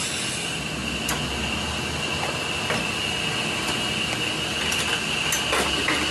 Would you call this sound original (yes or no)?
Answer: yes